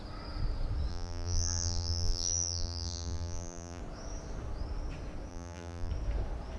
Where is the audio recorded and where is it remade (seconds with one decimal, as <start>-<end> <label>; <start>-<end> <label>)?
0.0-0.9 recorded; 0.9-3.8 remade; 3.8-5.3 recorded; 5.3-5.9 remade; 5.9-6.6 recorded